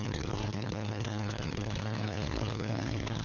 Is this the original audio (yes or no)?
no